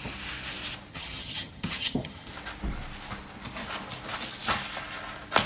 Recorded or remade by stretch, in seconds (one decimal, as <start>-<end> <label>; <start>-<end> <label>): 0.0-0.9 recorded; 0.9-2.3 remade; 2.3-5.5 recorded